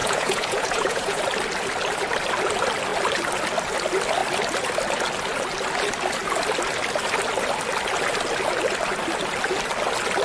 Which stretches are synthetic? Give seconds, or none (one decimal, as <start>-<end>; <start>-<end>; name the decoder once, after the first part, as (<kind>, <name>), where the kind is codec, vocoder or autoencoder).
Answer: 0.0-1.2 (vocoder, Vocos)